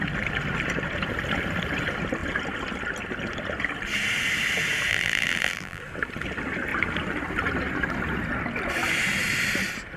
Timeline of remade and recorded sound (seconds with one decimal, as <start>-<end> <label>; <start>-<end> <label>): 0.0-4.9 recorded; 4.9-5.8 remade; 5.8-10.0 recorded